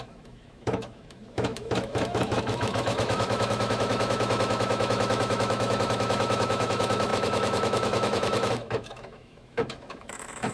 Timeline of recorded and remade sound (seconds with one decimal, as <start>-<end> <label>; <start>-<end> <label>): 0.0-10.5 remade